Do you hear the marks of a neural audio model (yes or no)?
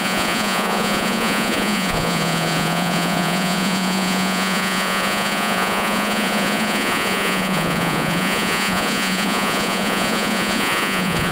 yes